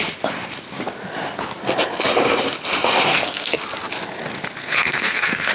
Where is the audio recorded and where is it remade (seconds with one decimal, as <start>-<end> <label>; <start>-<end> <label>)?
0.0-3.1 recorded; 3.1-3.6 remade; 3.6-4.6 recorded; 4.6-5.5 remade